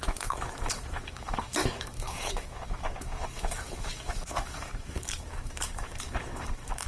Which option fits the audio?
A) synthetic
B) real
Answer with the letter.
A